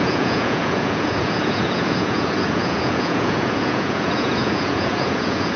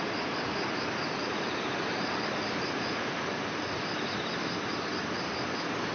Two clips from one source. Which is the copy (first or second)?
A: first